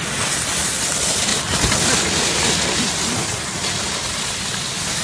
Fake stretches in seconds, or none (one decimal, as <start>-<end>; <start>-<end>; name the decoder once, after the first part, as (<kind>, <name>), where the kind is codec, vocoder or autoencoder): none